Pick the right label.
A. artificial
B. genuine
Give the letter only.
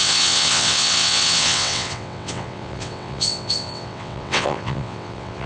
A